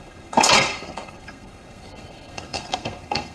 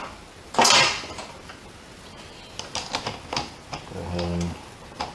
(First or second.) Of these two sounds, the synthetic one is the first